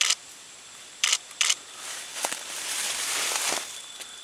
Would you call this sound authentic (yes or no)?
no